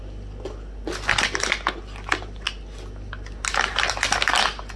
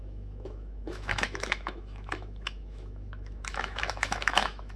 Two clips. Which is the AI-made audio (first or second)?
second